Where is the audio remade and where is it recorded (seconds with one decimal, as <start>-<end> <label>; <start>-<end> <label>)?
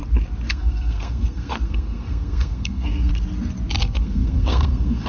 0.0-0.5 recorded; 0.5-3.1 remade; 3.1-3.8 recorded; 3.8-5.1 remade